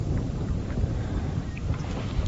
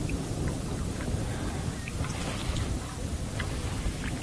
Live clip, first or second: second